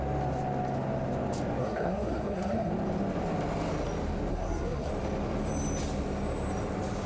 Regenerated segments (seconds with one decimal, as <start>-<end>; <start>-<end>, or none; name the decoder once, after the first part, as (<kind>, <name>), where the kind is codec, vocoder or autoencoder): 1.6-2.7 (codec, SNAC); 4.3-4.9